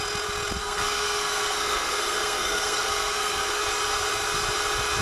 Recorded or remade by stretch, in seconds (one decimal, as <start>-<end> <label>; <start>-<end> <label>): 0.0-0.6 recorded; 0.6-3.6 remade; 3.6-5.0 recorded